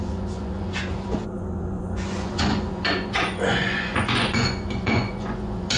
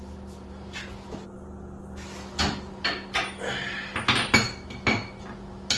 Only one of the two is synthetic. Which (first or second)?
first